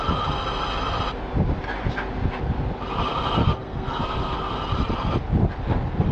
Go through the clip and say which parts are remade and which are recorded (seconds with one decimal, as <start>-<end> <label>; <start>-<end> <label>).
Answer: 0.0-3.4 recorded; 3.4-4.5 remade; 4.5-6.1 recorded